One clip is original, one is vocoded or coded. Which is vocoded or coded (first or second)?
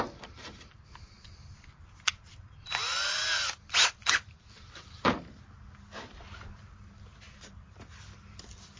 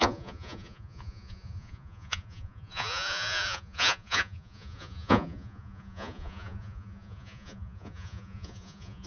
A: second